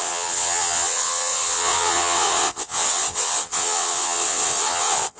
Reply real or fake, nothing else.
fake